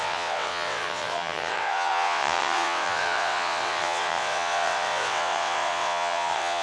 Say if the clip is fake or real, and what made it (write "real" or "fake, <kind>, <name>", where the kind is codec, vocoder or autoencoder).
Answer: fake, vocoder, WaveNeXt